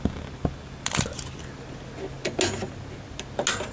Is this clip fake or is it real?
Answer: real